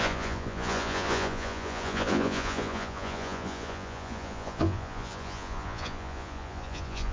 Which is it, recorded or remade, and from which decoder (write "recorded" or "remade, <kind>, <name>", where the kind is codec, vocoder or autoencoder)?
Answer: remade, vocoder, Vocos